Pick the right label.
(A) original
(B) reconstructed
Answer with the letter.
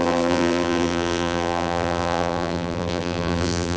B